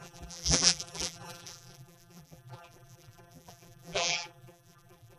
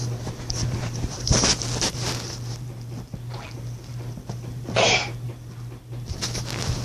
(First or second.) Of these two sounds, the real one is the second